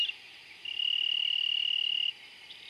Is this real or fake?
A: real